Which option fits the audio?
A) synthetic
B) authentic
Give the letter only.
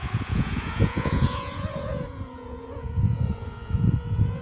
A